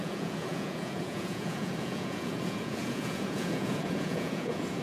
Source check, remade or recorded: remade